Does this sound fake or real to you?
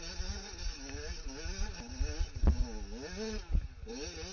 real